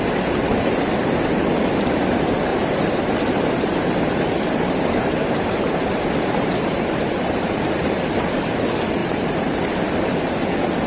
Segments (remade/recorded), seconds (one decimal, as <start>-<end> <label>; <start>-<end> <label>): 0.0-2.5 recorded; 2.5-7.6 remade; 7.6-9.0 recorded; 9.0-9.7 remade; 9.7-10.9 recorded